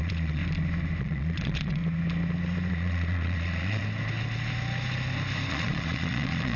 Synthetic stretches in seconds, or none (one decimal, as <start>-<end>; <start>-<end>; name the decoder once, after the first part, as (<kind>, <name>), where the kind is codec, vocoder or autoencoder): 0.0-0.4 (vocoder, Vocos); 1.0-1.8; 2.7-3.8; 5.5-6.6